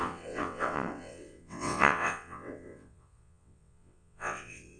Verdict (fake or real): fake